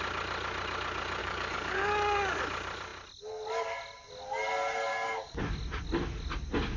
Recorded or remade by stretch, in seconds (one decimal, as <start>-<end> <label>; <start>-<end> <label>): 0.0-1.2 recorded; 1.2-2.4 remade; 2.4-4.9 recorded; 4.9-5.4 remade; 5.4-6.8 recorded